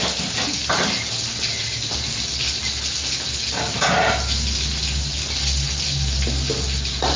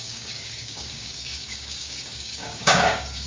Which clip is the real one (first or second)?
first